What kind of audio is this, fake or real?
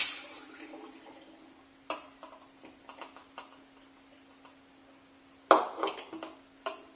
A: real